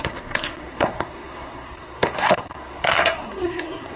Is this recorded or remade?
remade